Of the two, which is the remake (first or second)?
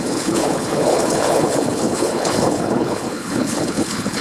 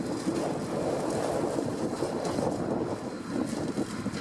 first